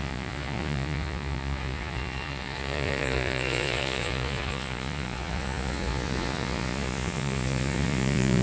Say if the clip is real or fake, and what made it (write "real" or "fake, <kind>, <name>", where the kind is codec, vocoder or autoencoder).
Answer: fake, vocoder, Vocos